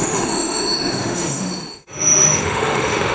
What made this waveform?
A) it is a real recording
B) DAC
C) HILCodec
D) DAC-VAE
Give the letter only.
D